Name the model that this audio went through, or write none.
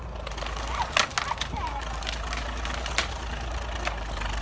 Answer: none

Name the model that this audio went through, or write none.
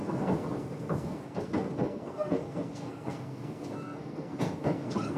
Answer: codec, SNAC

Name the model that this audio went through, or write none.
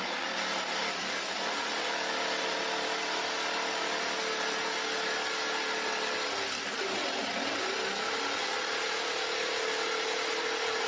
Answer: none